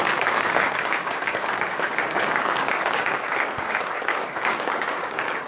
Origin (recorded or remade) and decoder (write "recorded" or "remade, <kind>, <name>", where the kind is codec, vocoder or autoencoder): remade, codec, DAC